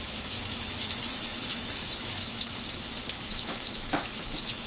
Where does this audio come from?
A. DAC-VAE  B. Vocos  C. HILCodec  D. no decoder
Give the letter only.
A